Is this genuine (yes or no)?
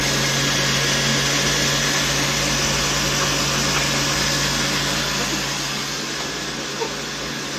yes